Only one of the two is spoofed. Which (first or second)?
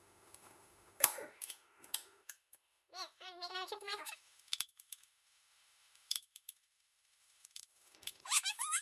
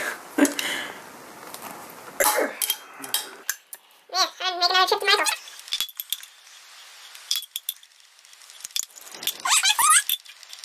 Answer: first